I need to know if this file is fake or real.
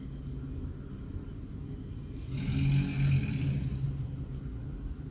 real